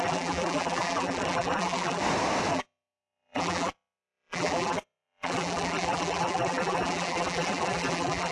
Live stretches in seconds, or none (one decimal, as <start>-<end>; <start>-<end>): 2.0-2.5